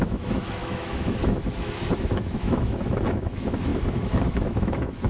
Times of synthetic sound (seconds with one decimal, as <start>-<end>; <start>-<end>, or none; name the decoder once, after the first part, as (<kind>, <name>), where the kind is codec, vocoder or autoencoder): 0.0-5.1 (autoencoder, DAC-VAE)